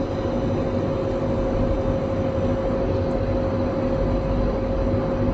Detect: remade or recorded recorded